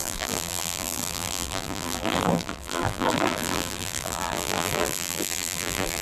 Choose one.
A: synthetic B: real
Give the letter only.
A